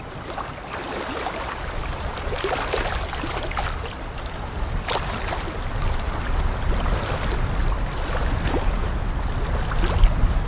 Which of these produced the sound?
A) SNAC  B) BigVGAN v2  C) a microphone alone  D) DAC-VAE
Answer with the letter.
C